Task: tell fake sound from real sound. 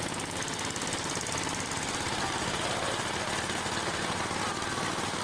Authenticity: real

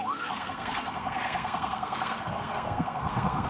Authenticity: fake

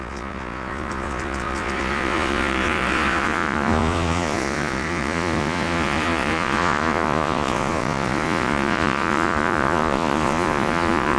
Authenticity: fake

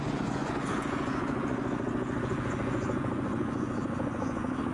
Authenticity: fake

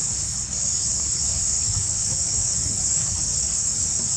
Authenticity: fake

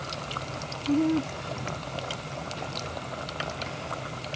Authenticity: real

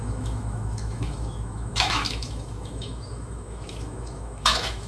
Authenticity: fake